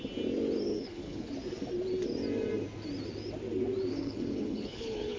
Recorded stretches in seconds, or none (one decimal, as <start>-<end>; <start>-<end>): 0.0-0.7; 1.3-3.9